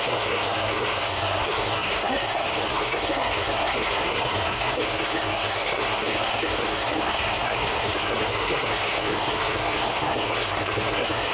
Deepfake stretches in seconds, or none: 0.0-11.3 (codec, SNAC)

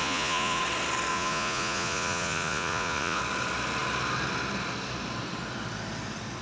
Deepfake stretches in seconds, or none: 0.0-0.6 (vocoder, Vocos); 1.1-3.2